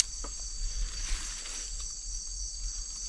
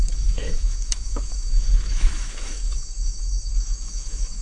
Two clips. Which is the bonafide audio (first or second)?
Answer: first